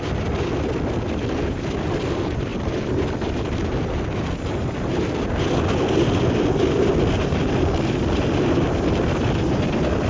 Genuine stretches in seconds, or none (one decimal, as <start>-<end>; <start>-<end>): 0.0-10.1